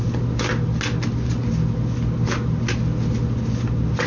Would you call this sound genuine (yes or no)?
yes